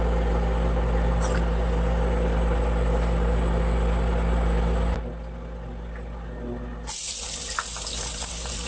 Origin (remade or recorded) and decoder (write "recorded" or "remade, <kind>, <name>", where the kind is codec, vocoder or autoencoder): recorded